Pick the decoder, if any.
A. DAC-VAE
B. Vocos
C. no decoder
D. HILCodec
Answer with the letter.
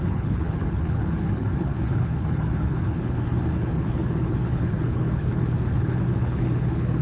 D